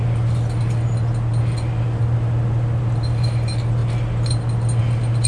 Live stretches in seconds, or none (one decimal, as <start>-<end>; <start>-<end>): 0.0-5.3